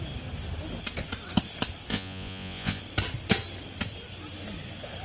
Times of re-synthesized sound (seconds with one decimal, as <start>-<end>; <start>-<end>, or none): 1.9-2.8